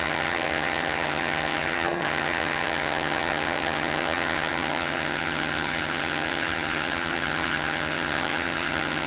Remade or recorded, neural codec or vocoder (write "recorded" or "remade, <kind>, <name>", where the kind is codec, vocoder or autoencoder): remade, vocoder, HiFi-GAN